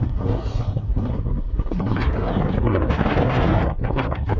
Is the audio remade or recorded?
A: remade